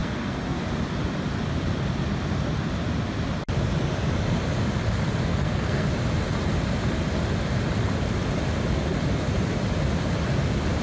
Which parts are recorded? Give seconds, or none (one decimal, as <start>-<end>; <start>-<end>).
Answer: 0.6-5.3; 5.9-10.8